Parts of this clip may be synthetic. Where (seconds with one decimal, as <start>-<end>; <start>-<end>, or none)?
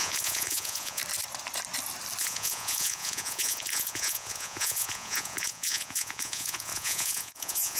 0.0-1.0; 2.2-7.8